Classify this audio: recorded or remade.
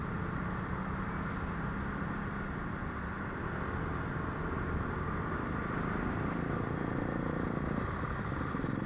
recorded